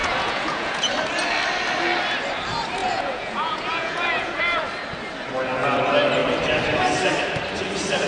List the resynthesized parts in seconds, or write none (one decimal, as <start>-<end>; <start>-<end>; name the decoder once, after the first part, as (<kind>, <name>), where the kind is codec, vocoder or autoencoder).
0.0-0.9 (vocoder, Vocos); 2.8-4.4